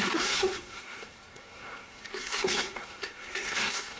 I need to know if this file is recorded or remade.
remade